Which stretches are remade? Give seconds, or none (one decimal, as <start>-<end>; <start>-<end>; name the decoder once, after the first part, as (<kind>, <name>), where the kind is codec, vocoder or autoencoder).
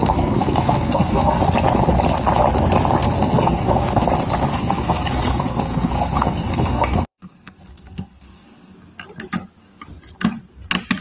0.0-1.4 (codec, SNAC); 3.0-4.1; 4.5-8.7